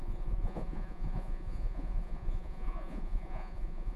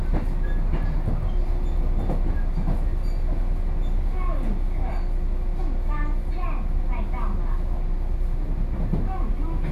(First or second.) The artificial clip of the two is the first